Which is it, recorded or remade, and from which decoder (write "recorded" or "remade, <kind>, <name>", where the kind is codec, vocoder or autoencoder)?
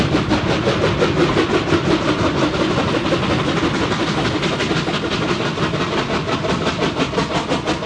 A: recorded